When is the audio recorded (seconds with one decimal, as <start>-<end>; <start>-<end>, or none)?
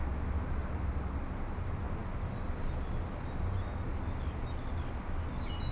0.0-5.7